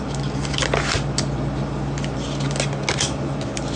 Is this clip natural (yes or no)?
yes